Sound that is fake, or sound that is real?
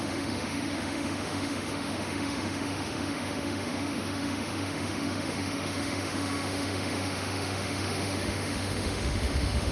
fake